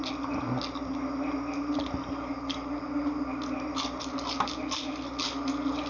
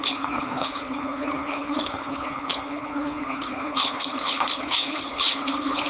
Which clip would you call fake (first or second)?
second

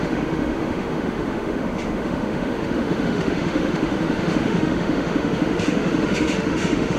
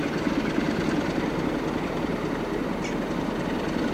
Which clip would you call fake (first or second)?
first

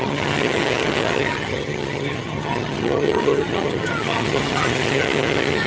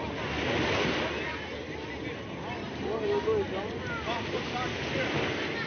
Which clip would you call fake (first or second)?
first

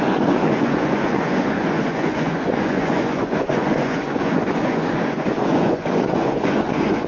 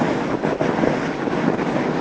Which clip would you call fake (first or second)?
first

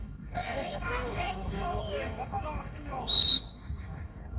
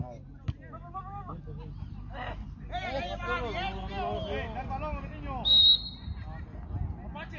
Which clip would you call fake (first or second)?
first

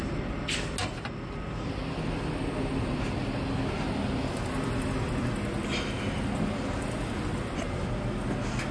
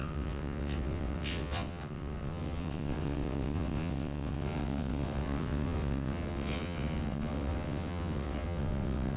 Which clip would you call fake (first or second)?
second